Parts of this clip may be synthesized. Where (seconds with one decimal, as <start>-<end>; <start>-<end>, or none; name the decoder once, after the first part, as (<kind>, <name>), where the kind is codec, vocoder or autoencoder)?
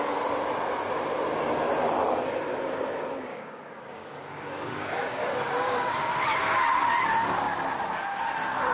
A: 3.3-5.9 (codec, DAC)